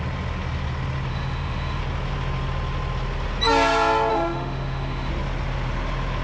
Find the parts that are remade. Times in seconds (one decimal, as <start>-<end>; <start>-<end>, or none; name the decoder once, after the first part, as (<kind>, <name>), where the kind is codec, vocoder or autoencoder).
1.1-1.8 (autoencoder, DAC-VAE); 4.1-5.1